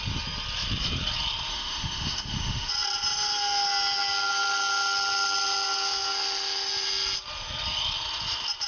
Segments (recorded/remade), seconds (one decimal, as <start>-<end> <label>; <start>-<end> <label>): 0.0-1.5 recorded; 1.5-2.7 remade; 2.7-8.7 recorded

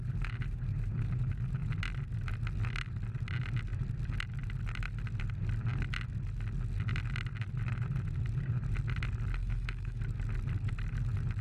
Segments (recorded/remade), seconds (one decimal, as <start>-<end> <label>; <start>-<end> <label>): 0.0-9.4 recorded; 9.4-10.0 remade; 10.0-11.4 recorded

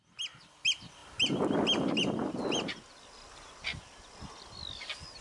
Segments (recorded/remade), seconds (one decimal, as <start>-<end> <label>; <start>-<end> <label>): 0.0-5.2 recorded